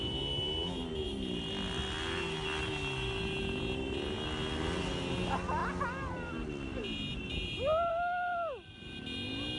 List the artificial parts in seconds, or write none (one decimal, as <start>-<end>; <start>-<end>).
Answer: none